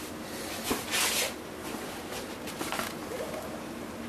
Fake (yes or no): no